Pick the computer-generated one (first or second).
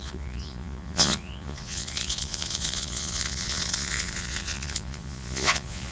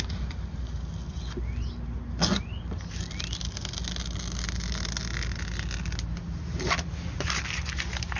first